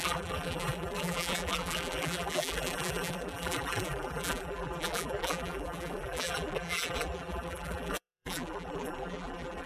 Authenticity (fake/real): fake